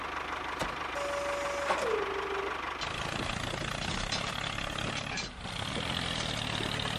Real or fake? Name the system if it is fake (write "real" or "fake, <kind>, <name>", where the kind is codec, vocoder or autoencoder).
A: real